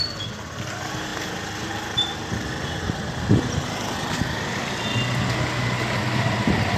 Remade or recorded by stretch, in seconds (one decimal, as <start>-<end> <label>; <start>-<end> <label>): 0.0-6.8 recorded